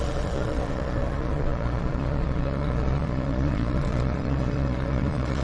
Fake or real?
fake